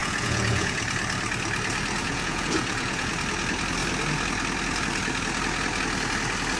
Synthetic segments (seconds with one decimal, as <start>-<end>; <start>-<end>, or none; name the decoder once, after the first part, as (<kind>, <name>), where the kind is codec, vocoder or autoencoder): 0.0-0.8 (vocoder, Vocos); 2.0-3.1